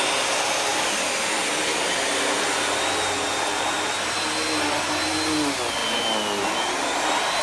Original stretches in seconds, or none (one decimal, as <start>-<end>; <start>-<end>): 0.0-7.4